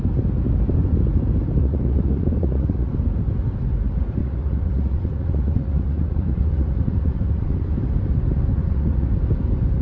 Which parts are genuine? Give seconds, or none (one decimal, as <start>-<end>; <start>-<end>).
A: 0.0-1.6; 2.9-4.2; 7.7-8.5; 9.1-9.8